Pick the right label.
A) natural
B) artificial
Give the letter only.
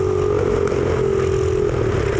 A